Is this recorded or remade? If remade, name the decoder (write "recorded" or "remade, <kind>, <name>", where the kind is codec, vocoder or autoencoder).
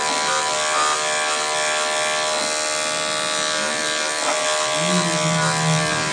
recorded